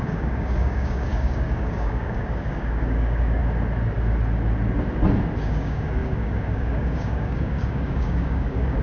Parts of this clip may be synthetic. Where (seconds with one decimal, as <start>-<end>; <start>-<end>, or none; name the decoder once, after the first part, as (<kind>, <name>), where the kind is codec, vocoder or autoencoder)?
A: 0.0-3.4 (codec, DAC); 5.4-8.8